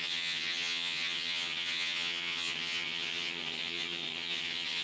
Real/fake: fake